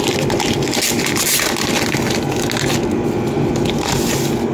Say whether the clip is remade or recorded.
recorded